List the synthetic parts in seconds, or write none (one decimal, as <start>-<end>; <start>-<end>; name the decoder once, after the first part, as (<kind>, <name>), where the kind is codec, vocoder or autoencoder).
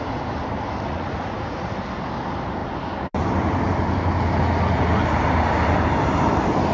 0.9-1.7 (vocoder, Vocos)